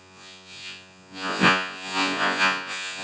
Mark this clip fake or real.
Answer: fake